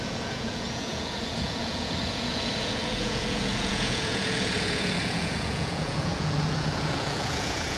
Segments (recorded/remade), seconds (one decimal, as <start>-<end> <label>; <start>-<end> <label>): 0.0-7.8 remade